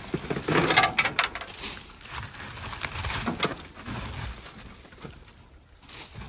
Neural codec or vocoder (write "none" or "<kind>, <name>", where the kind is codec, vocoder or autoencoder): none